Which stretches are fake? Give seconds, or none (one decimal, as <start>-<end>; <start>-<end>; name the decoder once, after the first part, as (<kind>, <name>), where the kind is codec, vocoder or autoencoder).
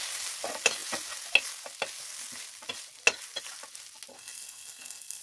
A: 4.1-5.2 (codec, SNAC)